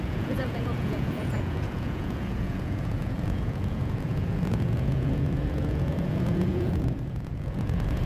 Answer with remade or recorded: remade